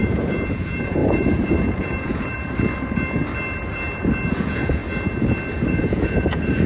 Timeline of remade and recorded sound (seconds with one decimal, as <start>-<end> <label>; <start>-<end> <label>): 0.0-2.3 remade; 2.3-4.3 recorded; 4.3-4.8 remade; 4.8-5.7 recorded; 5.7-6.7 remade